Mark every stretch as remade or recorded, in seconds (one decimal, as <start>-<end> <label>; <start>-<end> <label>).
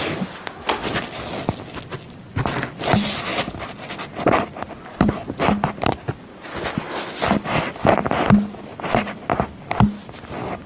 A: 0.0-10.7 recorded